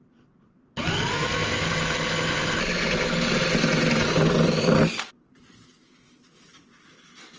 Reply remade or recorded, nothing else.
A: recorded